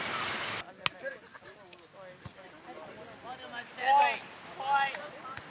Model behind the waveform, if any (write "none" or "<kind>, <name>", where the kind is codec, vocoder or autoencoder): none